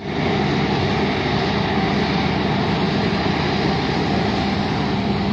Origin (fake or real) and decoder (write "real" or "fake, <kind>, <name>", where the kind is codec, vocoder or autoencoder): real